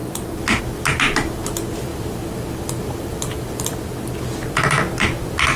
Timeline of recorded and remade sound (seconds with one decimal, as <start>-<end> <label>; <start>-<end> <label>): 0.0-1.9 recorded; 1.9-3.8 remade; 3.8-5.6 recorded